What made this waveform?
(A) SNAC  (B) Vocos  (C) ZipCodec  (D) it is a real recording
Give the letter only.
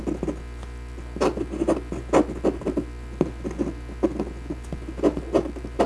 D